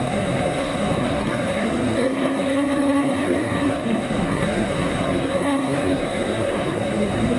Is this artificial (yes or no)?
yes